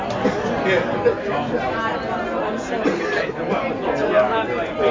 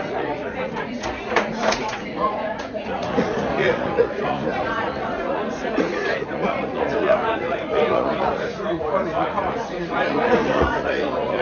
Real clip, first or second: first